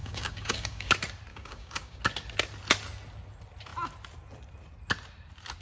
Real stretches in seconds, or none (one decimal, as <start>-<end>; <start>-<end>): 0.9-1.3; 2.0-5.6